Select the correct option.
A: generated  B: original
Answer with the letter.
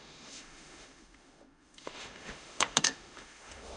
A